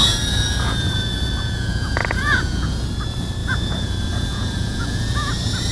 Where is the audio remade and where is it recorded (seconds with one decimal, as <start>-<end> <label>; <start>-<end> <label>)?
0.0-2.9 remade; 2.9-3.4 recorded; 3.4-5.3 remade; 5.3-5.7 recorded